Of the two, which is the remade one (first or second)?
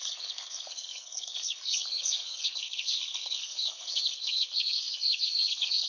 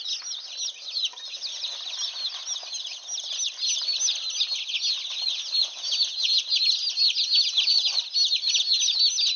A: first